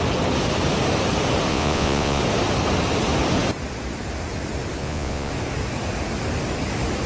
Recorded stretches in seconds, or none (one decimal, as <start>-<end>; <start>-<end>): 0.0-1.5; 2.2-4.8; 5.3-7.1